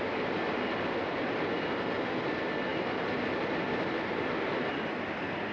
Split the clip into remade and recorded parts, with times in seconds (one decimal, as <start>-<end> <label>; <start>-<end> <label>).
0.0-5.5 recorded

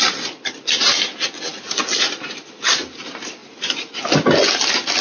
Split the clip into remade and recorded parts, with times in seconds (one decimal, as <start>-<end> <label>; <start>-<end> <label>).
0.0-5.0 recorded

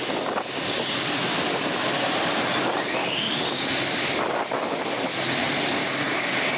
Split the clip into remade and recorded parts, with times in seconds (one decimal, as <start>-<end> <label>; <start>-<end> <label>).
0.0-3.0 recorded; 3.0-4.0 remade; 4.0-5.8 recorded; 5.8-6.6 remade

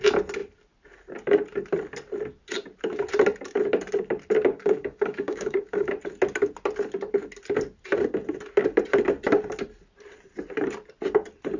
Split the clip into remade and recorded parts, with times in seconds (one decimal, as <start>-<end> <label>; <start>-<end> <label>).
0.0-4.5 recorded; 4.5-5.9 remade; 5.9-11.6 recorded